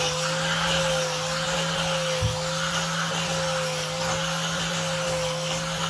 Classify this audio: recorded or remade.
recorded